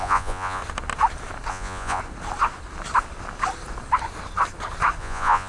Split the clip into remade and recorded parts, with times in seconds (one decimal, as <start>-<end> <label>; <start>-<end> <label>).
0.0-0.6 remade; 0.6-1.5 recorded; 1.5-2.0 remade; 2.0-5.0 recorded; 5.0-5.5 remade